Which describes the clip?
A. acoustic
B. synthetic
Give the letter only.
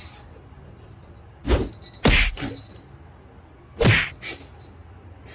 A